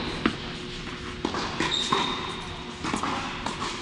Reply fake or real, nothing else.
real